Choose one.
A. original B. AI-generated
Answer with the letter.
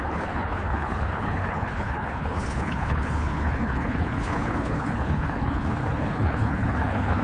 B